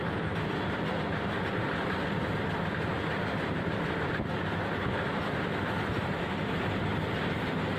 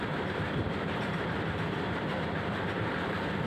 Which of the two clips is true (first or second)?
first